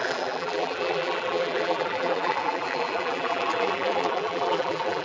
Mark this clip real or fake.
fake